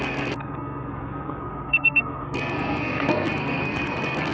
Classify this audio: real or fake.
fake